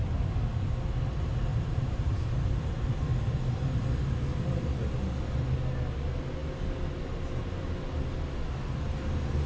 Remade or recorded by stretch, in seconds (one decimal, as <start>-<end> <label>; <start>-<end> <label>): 0.0-1.5 recorded; 1.5-3.1 remade; 3.1-9.5 recorded

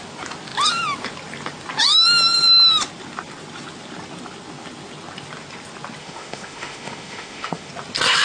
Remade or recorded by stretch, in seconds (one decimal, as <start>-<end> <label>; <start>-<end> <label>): 0.0-6.0 recorded; 6.0-7.7 remade; 7.7-8.2 recorded

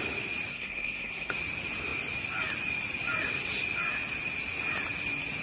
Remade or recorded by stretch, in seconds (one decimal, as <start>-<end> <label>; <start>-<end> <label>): 0.0-0.5 recorded; 0.5-1.3 remade; 1.3-5.4 recorded

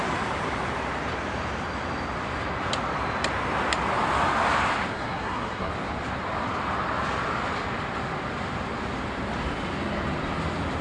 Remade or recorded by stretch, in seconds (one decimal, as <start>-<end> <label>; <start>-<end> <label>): 0.0-4.9 recorded; 4.9-5.7 remade; 5.7-10.8 recorded

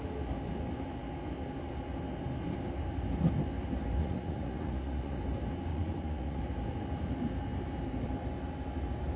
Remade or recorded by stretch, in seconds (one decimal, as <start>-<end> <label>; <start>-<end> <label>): 0.0-4.0 recorded; 4.0-5.2 remade; 5.2-5.7 recorded; 5.7-6.4 remade; 6.4-9.2 recorded

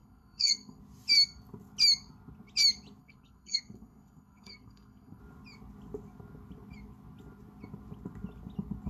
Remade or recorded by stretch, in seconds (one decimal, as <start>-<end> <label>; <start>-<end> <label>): 0.0-0.8 remade; 0.8-3.0 recorded; 3.0-5.2 remade; 5.2-8.9 recorded

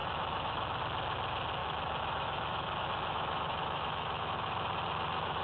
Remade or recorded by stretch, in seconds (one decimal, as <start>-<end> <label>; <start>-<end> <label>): 0.0-0.8 remade; 0.8-1.6 recorded; 1.6-4.3 remade; 4.3-5.4 recorded

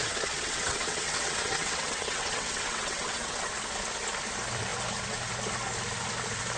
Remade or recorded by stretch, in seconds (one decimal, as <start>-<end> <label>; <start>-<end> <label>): 0.0-3.5 remade; 3.5-6.6 recorded